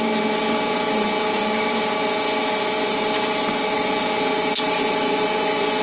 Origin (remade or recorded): recorded